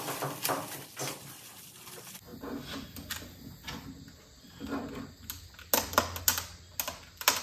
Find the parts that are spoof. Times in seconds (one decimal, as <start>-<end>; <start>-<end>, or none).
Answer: none